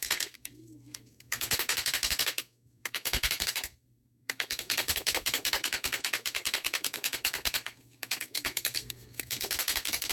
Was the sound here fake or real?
fake